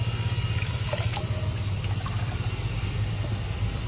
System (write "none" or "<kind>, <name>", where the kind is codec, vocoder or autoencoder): none